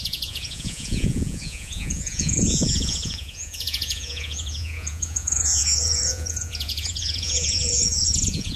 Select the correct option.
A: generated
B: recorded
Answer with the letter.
A